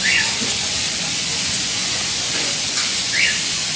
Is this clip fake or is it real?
fake